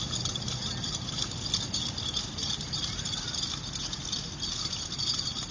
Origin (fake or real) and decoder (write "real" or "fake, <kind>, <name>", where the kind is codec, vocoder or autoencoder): real